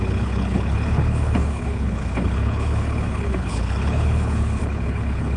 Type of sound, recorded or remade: remade